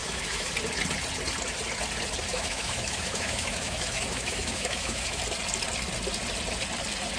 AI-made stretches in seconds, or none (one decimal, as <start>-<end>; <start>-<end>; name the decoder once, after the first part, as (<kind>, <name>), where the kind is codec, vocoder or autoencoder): 0.0-0.5 (autoencoder, DAC-VAE); 2.3-5.2